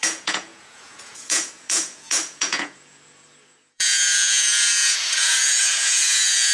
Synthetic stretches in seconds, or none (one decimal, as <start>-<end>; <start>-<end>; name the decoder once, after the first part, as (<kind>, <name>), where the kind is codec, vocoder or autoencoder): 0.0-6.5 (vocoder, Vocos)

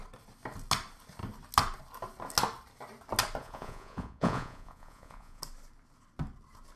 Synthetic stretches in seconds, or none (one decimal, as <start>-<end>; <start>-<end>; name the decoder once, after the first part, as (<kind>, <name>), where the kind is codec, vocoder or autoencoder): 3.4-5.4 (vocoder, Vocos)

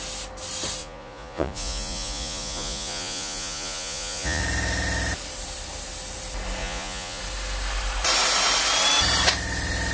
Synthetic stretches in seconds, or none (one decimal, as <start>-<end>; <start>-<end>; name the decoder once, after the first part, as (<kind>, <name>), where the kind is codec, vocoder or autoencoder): 0.8-4.4 (vocoder, Vocos); 6.6-7.2

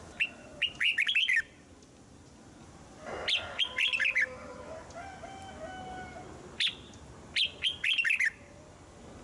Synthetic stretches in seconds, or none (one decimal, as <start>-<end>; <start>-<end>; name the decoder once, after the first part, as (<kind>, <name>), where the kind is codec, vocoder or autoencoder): none

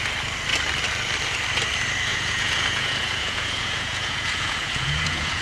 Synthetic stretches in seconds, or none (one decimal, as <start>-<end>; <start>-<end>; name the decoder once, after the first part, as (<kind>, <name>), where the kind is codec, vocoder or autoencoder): 2.1-5.4 (vocoder, Vocos)

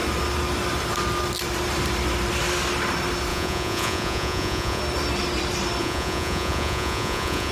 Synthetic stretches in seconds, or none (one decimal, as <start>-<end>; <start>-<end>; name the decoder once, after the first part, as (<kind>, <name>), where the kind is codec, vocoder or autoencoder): 3.3-4.8 (vocoder, Vocos); 5.8-7.5